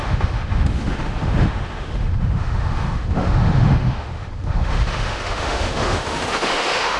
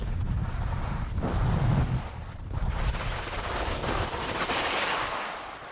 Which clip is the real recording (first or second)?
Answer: second